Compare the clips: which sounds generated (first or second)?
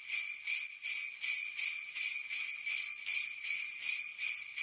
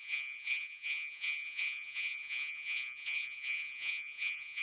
second